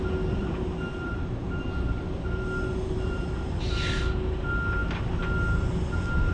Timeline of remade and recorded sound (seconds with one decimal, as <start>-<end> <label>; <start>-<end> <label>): 0.0-2.7 recorded; 2.7-4.0 remade; 4.0-6.3 recorded